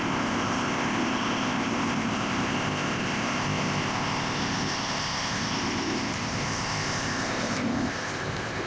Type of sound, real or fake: fake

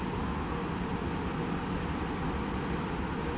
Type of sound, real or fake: real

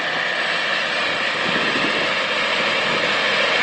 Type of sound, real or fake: real